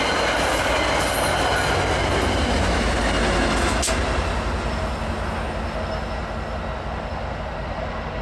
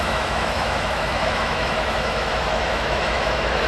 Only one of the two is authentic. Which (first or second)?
first